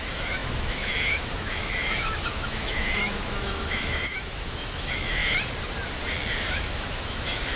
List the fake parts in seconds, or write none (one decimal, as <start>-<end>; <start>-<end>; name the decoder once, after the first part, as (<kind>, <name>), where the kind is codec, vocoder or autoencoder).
0.0-5.2 (autoencoder, DAC-VAE); 6.5-7.6